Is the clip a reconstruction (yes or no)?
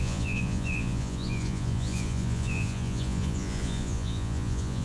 yes